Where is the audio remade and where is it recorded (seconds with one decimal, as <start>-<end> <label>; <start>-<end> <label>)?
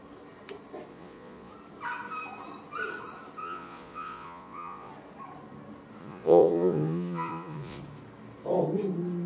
0.0-0.9 recorded; 0.9-1.5 remade; 1.5-3.4 recorded; 3.4-4.9 remade; 4.9-6.0 recorded; 6.0-7.8 remade; 7.8-9.3 recorded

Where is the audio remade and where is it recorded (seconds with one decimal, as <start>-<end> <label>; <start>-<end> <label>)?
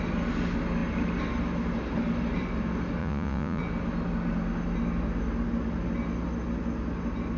0.0-3.0 recorded; 3.0-3.6 remade; 3.6-7.4 recorded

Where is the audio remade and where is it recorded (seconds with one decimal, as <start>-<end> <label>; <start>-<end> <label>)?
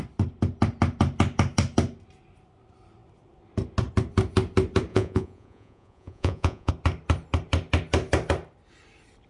0.0-4.9 recorded; 4.9-6.7 remade; 6.7-9.3 recorded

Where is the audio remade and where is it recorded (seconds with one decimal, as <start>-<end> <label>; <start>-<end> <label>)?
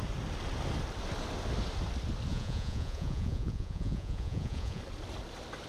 0.0-2.3 recorded; 2.3-4.8 remade; 4.8-5.7 recorded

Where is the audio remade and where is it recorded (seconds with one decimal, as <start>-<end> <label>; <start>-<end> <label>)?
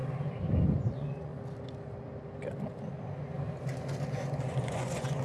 0.0-0.9 recorded; 0.9-1.3 remade; 1.3-4.1 recorded; 4.1-5.2 remade